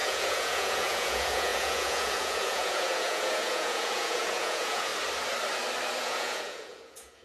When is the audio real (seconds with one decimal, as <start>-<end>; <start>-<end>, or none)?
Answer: 4.9-6.0